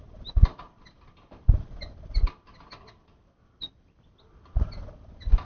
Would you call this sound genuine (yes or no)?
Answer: yes